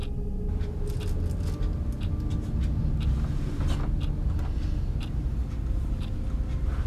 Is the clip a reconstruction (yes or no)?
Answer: no